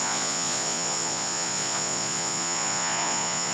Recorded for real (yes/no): no